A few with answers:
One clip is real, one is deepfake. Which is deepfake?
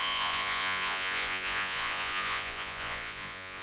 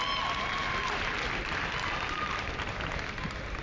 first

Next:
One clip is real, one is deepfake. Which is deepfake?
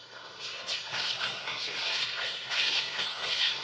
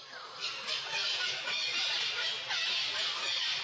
first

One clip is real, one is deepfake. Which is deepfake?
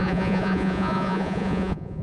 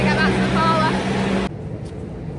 first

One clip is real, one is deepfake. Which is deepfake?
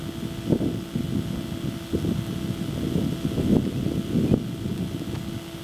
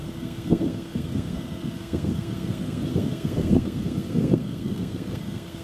second